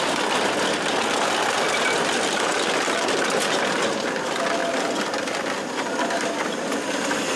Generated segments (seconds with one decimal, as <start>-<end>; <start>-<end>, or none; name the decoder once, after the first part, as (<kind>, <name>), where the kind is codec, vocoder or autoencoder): none